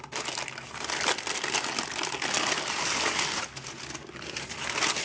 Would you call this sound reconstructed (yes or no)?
no